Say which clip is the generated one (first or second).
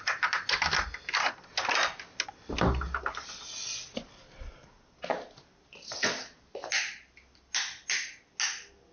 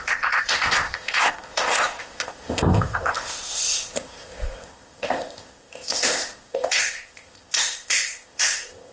second